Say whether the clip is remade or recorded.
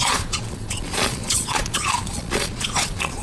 remade